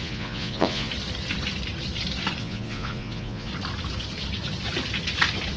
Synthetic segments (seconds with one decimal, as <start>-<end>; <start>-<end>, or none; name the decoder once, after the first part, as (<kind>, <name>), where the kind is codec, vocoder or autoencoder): 0.0-0.9 (vocoder, Vocos); 2.4-3.5